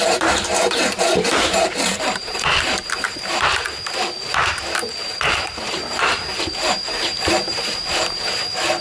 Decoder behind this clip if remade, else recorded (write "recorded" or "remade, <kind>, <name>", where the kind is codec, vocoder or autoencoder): remade, vocoder, BigVGAN v2